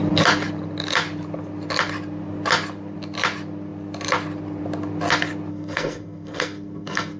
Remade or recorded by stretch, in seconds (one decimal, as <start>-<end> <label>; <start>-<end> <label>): 0.0-5.5 recorded; 5.5-7.2 remade